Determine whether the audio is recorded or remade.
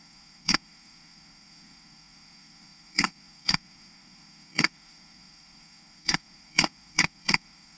remade